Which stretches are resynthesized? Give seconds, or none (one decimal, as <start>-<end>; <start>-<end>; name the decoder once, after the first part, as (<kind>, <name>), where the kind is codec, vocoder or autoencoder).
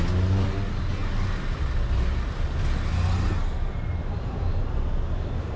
none